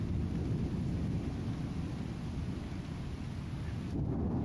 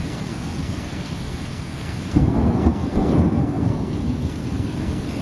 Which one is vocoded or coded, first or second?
second